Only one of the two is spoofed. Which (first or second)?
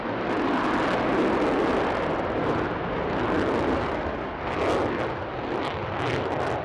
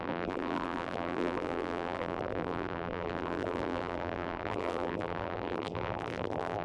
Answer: second